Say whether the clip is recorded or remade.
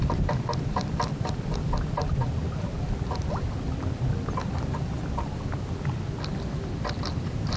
recorded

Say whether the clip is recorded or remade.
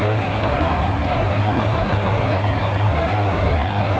remade